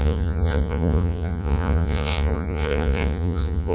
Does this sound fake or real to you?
fake